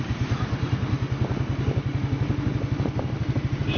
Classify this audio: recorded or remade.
recorded